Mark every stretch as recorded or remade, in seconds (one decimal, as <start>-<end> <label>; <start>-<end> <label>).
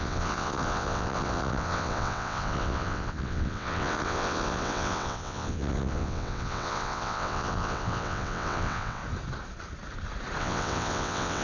0.0-9.0 remade; 9.0-10.4 recorded; 10.4-11.4 remade